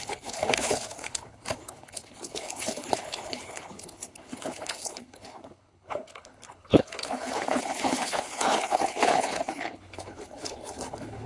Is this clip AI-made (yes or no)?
yes